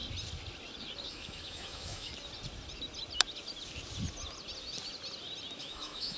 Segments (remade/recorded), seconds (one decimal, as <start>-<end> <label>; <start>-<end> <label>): 0.0-1.1 recorded; 1.1-2.1 remade; 2.1-5.6 recorded; 5.6-6.2 remade